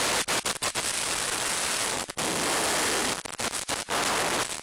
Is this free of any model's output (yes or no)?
yes